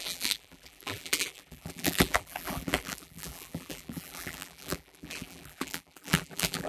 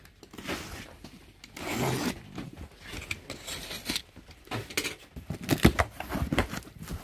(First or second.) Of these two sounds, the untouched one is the second